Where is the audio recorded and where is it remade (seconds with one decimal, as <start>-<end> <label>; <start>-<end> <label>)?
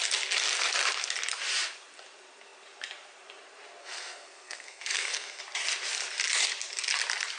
0.0-3.8 recorded; 3.8-5.4 remade; 5.4-7.4 recorded